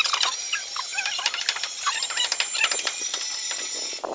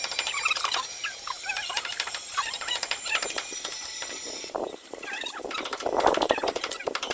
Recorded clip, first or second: first